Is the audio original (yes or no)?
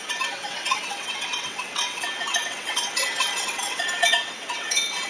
no